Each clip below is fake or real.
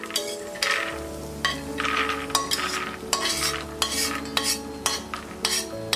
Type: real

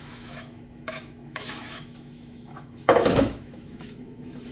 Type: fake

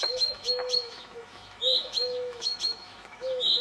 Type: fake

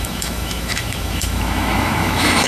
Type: fake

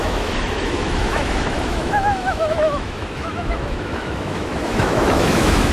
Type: fake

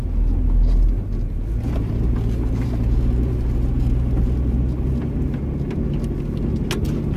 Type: real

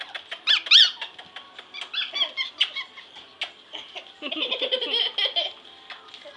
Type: real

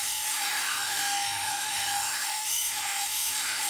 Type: fake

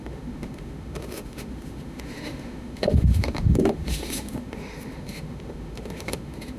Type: fake